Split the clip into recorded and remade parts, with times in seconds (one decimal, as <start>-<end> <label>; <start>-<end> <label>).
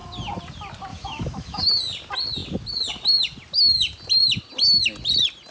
0.0-0.9 recorded; 0.9-1.6 remade; 1.6-5.5 recorded